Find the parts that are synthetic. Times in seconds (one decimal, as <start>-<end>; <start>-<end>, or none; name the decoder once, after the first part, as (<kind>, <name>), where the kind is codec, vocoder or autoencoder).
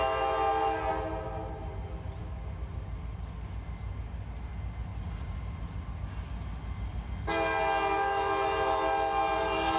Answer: 4.9-5.8 (vocoder, BigVGAN v2)